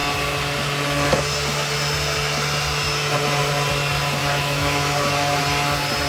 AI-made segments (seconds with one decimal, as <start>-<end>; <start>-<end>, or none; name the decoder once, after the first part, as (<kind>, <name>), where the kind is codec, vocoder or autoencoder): 4.2-5.4 (autoencoder, DAC-VAE)